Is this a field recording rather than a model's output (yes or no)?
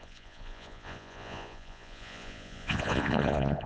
no